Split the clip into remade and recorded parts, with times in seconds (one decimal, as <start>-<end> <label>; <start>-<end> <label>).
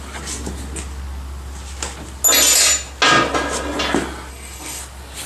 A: 0.0-4.3 recorded; 4.3-4.8 remade; 4.8-5.3 recorded